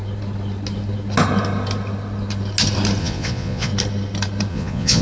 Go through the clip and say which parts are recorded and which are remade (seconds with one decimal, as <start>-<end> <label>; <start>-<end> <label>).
0.0-3.0 recorded; 3.0-3.7 remade; 3.7-4.5 recorded; 4.5-5.0 remade